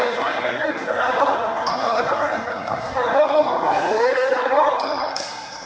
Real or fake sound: fake